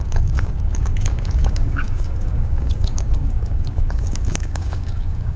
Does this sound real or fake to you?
fake